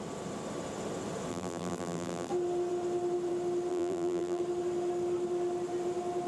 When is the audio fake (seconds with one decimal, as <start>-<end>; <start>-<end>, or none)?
1.3-2.3; 3.7-4.4